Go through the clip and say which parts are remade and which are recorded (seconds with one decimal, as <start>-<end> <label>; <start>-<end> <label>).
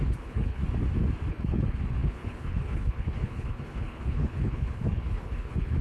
0.0-0.6 remade; 0.6-1.3 recorded; 1.3-5.8 remade